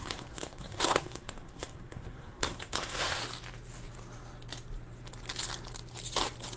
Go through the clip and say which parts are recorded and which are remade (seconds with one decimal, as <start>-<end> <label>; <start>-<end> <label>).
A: 0.0-3.2 remade; 3.2-6.6 recorded